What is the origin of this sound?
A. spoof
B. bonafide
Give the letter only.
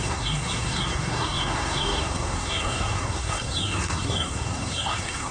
A